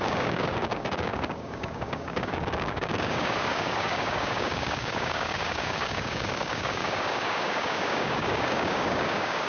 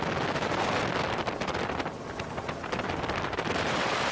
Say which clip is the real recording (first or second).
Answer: second